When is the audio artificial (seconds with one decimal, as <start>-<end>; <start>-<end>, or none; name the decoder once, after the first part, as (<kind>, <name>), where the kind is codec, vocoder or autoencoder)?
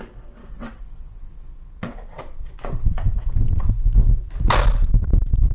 0.4-3.7 (vocoder, WaveNeXt)